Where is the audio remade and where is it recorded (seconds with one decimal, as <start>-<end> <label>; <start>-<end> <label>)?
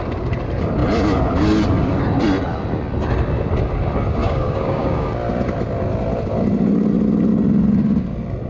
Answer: 0.0-4.2 recorded; 4.2-5.1 remade; 5.1-8.5 recorded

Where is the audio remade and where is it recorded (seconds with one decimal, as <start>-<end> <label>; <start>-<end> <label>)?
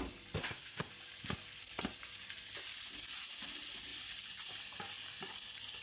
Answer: 0.0-0.4 recorded; 0.4-0.9 remade; 0.9-5.8 recorded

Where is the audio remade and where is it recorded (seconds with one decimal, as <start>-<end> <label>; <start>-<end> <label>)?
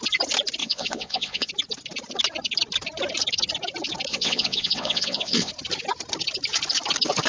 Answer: 0.0-0.6 recorded; 0.6-1.5 remade; 1.5-4.1 recorded; 4.1-5.5 remade; 5.5-7.3 recorded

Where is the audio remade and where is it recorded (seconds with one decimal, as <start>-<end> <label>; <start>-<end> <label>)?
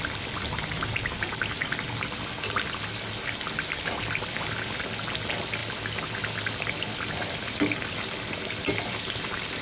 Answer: 0.0-9.6 recorded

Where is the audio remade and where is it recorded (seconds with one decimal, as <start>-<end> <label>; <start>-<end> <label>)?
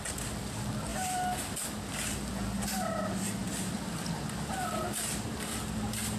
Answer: 0.0-0.9 remade; 0.9-2.0 recorded; 2.0-3.4 remade; 3.4-5.3 recorded; 5.3-6.2 remade